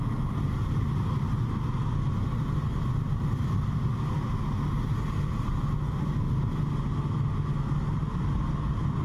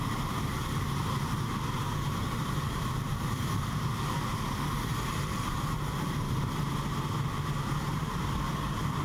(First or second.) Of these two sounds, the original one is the first